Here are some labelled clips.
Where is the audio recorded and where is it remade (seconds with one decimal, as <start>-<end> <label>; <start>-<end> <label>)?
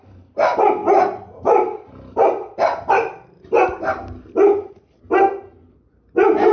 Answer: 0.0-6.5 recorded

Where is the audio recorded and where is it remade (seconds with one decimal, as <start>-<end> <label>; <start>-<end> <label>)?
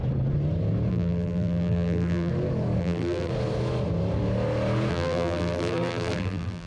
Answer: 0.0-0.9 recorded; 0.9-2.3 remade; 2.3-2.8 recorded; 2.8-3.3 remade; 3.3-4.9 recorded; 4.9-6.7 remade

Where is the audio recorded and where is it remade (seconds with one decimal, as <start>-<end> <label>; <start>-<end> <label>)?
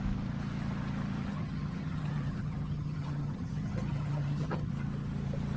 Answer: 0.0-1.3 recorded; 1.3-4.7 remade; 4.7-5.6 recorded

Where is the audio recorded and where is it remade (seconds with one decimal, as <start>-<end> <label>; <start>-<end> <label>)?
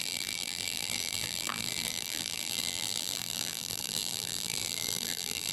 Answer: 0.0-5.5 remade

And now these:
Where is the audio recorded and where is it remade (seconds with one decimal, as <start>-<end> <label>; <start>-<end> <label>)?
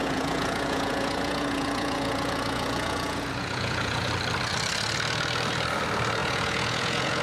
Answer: 0.0-4.1 remade; 4.1-6.2 recorded; 6.2-7.2 remade